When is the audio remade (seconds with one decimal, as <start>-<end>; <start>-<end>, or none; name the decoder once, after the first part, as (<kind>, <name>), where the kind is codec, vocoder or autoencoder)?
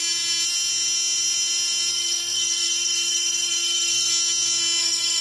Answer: 1.9-4.1 (codec, SNAC); 4.8-5.2